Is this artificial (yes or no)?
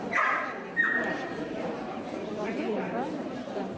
yes